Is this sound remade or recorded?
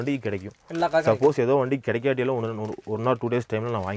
recorded